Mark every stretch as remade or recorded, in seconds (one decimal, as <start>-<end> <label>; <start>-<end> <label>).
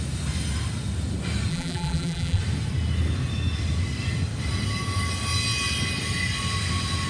0.0-1.5 recorded; 1.5-2.4 remade; 2.4-7.1 recorded